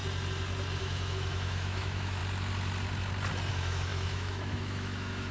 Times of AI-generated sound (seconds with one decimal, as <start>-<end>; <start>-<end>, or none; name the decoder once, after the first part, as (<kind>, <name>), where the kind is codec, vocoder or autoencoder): 0.8-2.2 (autoencoder, DAC-VAE); 3.5-5.3